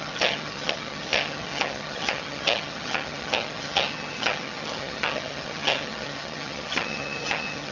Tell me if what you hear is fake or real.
fake